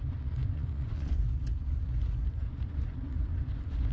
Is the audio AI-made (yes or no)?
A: yes